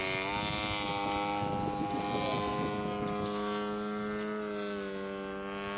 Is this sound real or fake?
real